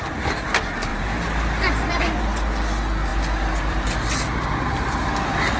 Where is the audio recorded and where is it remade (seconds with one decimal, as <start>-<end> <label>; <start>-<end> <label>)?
0.0-5.6 recorded